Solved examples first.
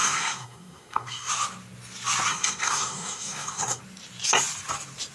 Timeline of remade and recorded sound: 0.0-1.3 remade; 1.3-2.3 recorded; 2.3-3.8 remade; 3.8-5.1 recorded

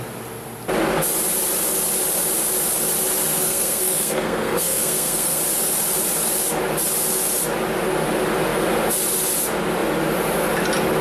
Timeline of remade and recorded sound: 0.0-3.3 recorded; 3.3-5.4 remade; 5.4-11.0 recorded

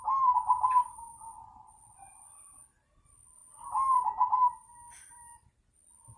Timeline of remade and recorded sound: 0.0-6.2 recorded

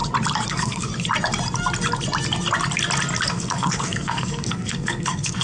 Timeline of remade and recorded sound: 0.0-0.5 recorded; 0.5-0.9 remade; 0.9-3.3 recorded; 3.3-5.4 remade

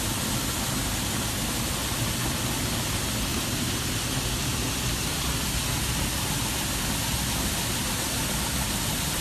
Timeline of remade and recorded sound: 0.0-9.2 recorded

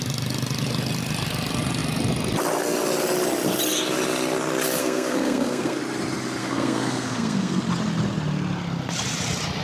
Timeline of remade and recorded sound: 0.0-4.8 recorded; 4.8-5.8 remade; 5.8-6.4 recorded; 6.4-7.6 remade; 7.6-9.6 recorded

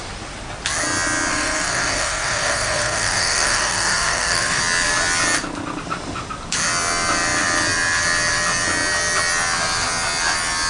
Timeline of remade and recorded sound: 0.0-1.3 recorded; 1.3-4.6 remade; 4.6-10.7 recorded

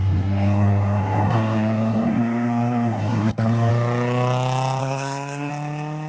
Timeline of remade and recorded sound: 0.0-3.7 remade; 3.7-4.8 recorded; 4.8-5.5 remade; 5.5-6.1 recorded